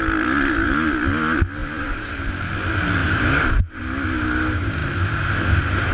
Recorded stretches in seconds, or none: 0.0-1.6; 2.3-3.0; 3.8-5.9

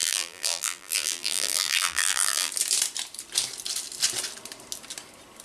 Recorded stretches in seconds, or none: 2.5-5.4

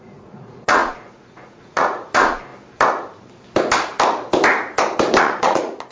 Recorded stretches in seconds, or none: 2.5-5.2

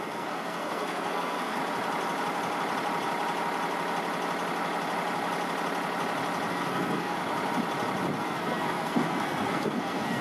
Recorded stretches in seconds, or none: 1.6-6.5; 7.2-8.2

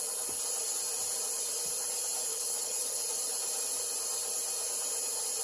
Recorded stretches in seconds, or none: 0.0-2.3; 3.0-5.4

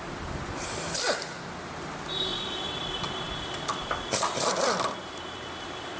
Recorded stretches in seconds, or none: 0.0-6.0